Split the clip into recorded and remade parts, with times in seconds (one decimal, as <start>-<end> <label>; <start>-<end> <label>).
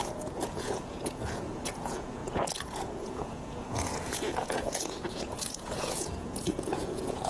0.0-7.3 remade